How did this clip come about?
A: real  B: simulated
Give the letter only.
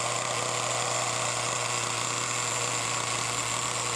A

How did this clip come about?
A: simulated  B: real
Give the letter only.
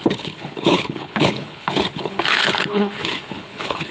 A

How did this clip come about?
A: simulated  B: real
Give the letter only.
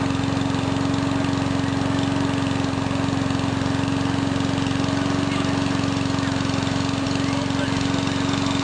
B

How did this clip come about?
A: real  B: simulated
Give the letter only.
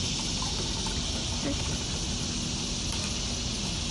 A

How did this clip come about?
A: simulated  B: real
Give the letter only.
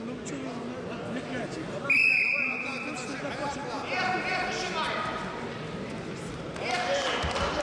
B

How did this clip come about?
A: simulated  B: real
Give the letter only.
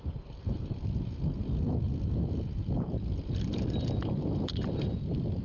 B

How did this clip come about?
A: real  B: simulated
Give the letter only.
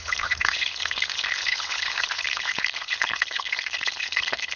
B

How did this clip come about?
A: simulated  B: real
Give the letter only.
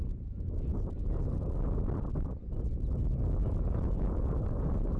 B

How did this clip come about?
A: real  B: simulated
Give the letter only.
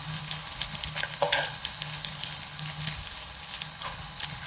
B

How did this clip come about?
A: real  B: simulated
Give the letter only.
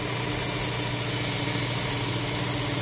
A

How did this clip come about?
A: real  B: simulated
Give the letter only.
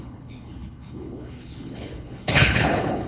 B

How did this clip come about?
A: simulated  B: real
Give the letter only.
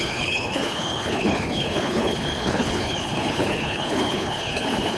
A